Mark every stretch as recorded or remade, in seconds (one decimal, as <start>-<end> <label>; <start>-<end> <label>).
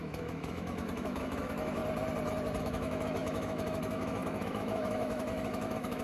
0.0-1.8 remade; 1.8-2.6 recorded; 2.6-6.0 remade